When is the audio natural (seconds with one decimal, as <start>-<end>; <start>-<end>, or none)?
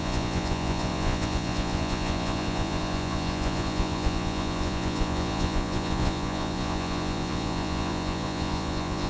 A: none